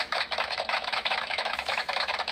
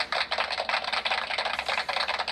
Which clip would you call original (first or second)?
second